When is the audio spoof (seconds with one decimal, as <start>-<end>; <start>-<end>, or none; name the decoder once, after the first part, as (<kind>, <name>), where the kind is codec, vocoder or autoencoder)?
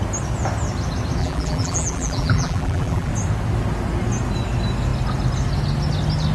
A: 1.2-3.1 (vocoder, BigVGAN v2)